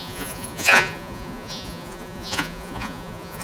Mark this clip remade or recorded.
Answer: remade